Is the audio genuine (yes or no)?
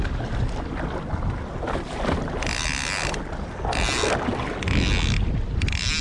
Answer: yes